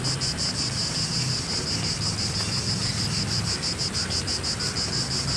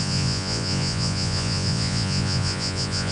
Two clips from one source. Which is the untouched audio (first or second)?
first